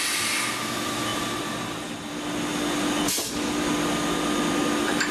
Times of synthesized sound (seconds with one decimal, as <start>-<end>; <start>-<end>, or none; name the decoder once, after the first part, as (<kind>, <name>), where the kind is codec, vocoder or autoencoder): none